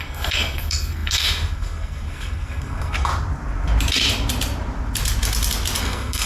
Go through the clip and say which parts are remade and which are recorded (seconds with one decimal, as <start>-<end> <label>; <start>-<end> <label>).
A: 0.0-3.1 remade; 3.1-5.8 recorded; 5.8-6.3 remade